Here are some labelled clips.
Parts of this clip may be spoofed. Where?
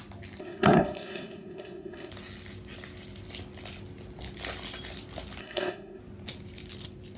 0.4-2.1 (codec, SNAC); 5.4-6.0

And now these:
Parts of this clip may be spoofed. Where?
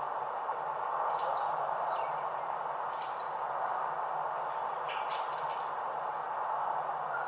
none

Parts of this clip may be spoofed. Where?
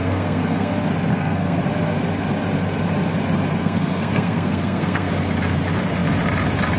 0.0-0.7 (codec, SNAC); 1.1-1.6; 3.6-5.1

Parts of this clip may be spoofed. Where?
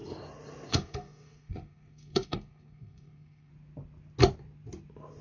0.7-3.5 (codec, SNAC)